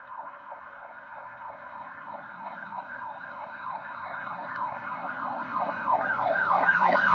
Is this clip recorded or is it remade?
remade